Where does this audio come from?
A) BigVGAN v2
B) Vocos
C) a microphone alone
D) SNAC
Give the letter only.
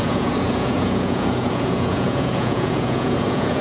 B